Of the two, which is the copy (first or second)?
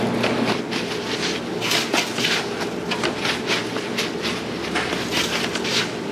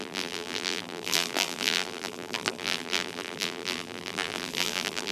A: second